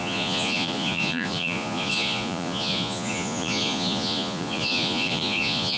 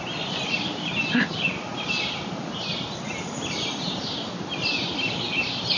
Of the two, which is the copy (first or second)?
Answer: first